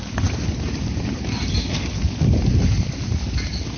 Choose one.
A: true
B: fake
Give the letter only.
A